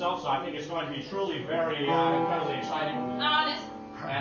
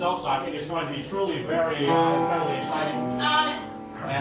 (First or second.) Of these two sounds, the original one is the first